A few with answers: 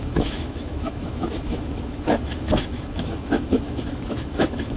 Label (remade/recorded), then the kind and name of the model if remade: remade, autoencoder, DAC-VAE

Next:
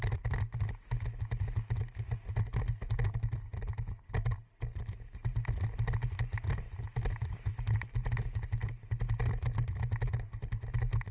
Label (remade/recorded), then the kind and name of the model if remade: recorded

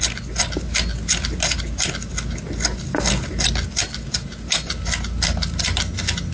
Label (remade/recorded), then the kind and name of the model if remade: recorded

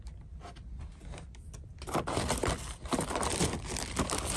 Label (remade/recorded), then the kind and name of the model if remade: recorded